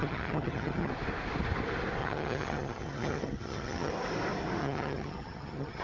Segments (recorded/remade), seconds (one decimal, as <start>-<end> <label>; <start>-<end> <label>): 0.0-0.9 remade; 0.9-2.0 recorded; 2.0-3.9 remade; 3.9-4.6 recorded; 4.6-5.8 remade

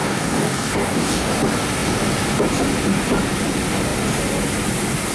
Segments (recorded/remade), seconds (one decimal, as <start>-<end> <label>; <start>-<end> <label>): 0.0-1.3 remade; 1.3-5.1 recorded

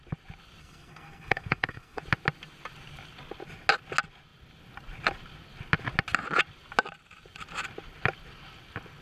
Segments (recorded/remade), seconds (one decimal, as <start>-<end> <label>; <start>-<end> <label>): 0.0-0.6 recorded; 0.6-2.0 remade; 2.0-9.0 recorded